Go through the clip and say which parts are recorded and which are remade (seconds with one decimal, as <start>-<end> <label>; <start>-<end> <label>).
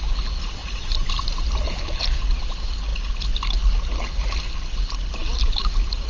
0.0-0.6 recorded; 0.6-2.2 remade; 2.2-6.1 recorded